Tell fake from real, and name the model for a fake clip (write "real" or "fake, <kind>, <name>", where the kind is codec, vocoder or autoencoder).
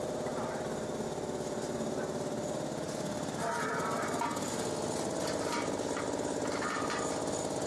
real